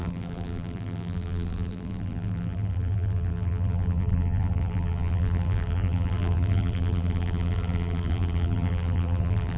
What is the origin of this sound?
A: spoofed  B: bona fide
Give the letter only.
A